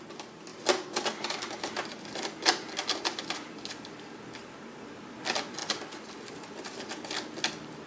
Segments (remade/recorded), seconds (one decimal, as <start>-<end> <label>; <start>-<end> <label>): 0.0-5.6 recorded; 5.6-6.6 remade; 6.6-7.9 recorded